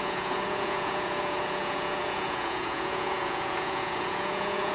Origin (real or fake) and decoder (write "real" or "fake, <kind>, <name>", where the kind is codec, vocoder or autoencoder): fake, vocoder, Vocos